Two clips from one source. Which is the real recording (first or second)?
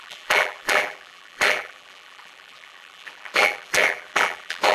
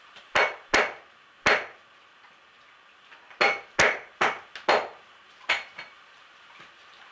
second